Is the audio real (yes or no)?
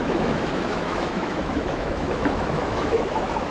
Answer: no